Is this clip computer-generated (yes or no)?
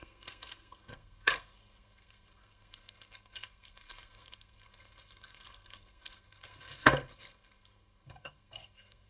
yes